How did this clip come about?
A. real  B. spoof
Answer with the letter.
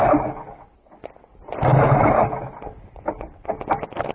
A